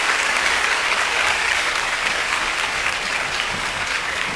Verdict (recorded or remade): remade